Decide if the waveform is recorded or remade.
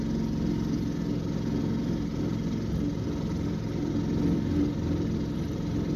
recorded